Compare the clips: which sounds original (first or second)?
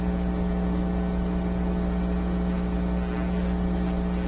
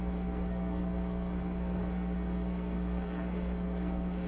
first